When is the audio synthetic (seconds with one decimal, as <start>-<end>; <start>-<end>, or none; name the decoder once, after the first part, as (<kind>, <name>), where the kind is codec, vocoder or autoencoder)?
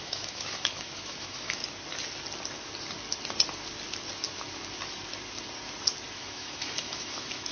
0.0-1.6 (autoencoder, DAC-VAE); 6.1-7.5